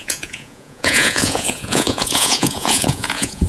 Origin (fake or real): fake